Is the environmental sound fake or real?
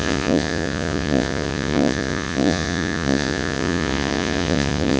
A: fake